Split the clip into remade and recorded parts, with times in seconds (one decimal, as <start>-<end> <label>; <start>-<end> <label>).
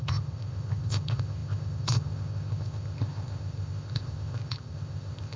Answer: 0.0-5.4 remade